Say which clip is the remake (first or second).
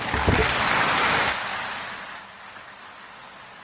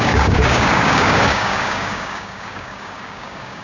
second